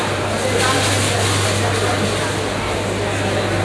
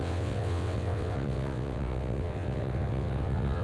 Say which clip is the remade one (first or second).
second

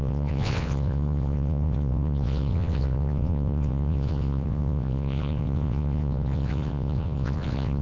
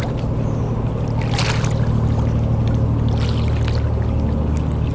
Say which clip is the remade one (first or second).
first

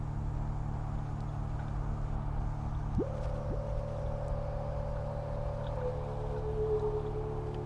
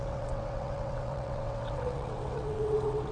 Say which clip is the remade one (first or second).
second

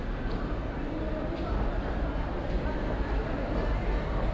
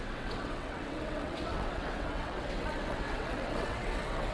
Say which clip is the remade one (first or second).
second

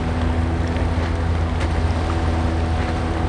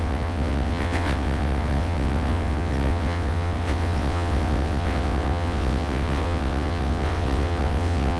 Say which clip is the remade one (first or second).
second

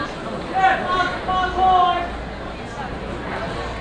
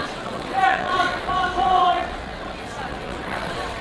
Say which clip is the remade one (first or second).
second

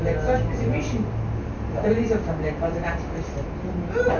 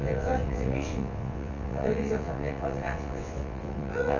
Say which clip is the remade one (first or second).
second